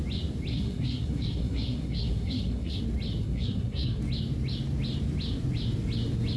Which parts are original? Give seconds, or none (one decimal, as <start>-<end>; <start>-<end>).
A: 0.0-0.5; 2.8-3.2; 4.0-6.4